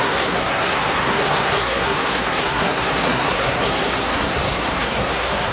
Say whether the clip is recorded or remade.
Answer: remade